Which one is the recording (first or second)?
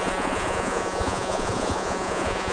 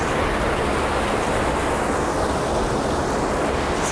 second